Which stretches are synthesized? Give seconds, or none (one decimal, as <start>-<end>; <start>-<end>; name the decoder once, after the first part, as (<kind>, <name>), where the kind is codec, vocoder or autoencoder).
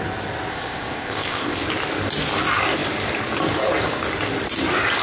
0.5-1.6 (codec, ZipCodec)